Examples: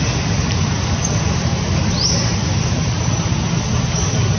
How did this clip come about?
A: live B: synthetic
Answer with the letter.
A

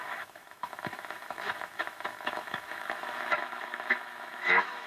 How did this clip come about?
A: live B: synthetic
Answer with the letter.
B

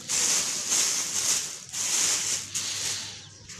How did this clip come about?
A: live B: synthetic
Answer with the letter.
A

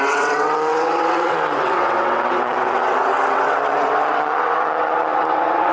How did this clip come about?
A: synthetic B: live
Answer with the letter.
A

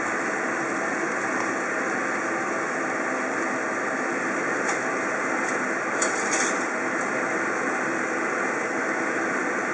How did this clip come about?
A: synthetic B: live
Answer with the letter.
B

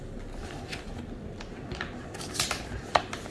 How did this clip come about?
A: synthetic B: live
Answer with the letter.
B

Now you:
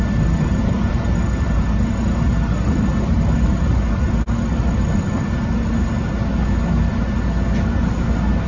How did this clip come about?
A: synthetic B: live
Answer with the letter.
B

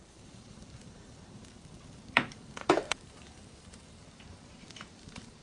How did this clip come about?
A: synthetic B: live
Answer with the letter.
A